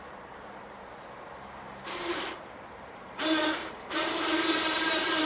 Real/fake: fake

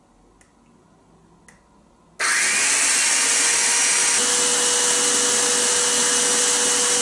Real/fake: real